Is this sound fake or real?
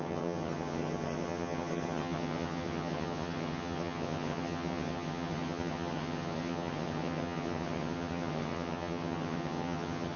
fake